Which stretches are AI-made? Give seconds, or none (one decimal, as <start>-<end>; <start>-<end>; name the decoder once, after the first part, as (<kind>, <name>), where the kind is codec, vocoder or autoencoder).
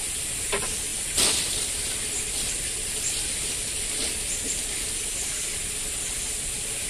0.0-6.9 (vocoder, BigVGAN v2)